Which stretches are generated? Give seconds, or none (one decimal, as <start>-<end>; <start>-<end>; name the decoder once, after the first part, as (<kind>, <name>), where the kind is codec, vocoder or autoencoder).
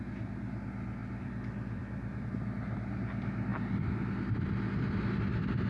1.0-2.3 (vocoder, BigVGAN v2)